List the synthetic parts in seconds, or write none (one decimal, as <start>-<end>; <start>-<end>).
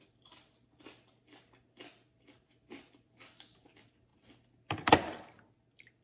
none